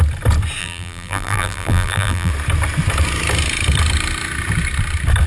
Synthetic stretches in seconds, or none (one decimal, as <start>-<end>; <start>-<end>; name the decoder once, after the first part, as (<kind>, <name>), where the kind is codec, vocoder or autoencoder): 0.6-2.3 (vocoder, BigVGAN v2)